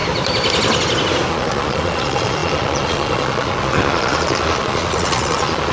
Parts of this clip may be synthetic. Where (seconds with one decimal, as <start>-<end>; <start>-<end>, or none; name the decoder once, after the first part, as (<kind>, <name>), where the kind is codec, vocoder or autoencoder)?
1.3-5.7 (vocoder, Vocos)

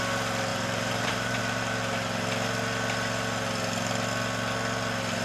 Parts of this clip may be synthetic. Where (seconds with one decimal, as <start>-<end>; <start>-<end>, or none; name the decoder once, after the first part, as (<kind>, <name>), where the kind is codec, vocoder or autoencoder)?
0.5-1.4 (vocoder, BigVGAN v2)

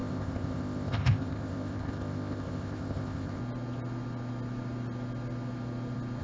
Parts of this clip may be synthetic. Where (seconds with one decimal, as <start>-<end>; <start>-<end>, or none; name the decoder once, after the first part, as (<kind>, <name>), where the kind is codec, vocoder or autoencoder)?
0.0-3.4 (codec, ZipCodec)

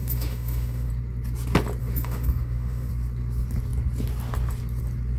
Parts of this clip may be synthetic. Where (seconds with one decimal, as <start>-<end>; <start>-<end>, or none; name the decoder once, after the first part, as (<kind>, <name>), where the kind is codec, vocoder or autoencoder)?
0.0-0.9 (autoencoder, DAC-VAE); 1.8-2.9

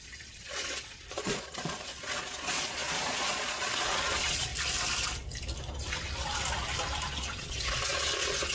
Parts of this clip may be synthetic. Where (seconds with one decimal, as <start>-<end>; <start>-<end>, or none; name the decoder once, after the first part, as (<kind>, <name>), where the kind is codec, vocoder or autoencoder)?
0.0-4.5 (vocoder, Vocos); 7.1-8.5

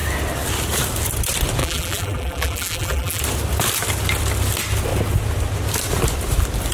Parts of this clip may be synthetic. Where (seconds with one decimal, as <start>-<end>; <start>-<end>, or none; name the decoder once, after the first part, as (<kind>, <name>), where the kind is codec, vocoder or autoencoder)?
1.6-3.2 (vocoder, BigVGAN v2)

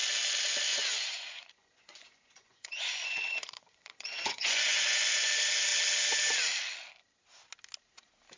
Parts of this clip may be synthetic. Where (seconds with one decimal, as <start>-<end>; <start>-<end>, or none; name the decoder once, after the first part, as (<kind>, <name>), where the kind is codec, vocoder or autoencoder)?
0.7-5.3 (vocoder, Vocos)

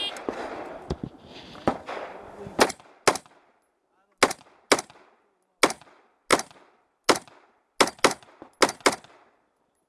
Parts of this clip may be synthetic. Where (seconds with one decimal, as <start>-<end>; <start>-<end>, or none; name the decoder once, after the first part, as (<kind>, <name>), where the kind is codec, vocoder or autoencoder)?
1.3-2.6 (vocoder, BigVGAN v2)